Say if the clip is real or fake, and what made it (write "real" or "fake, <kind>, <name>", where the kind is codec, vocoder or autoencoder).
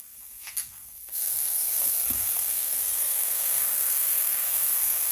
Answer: fake, codec, SNAC